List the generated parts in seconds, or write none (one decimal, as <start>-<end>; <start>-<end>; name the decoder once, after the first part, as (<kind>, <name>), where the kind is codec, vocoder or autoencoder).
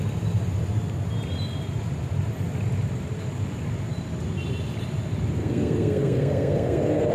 5.4-7.1 (codec, SNAC)